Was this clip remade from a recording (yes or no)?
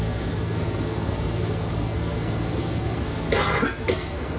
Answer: yes